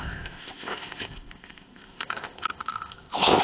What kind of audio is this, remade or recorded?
remade